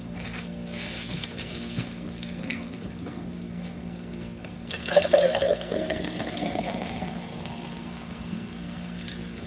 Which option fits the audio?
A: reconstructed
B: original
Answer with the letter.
A